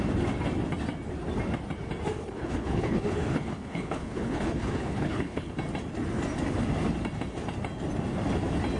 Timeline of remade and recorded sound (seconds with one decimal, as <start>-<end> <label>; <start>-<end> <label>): 0.0-2.2 recorded; 2.2-5.5 remade; 5.5-8.8 recorded